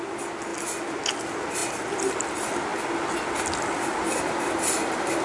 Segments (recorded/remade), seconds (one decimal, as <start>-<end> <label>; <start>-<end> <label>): 0.0-5.2 recorded